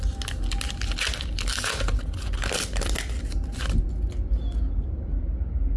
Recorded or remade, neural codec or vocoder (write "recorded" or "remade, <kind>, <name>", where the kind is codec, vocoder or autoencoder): recorded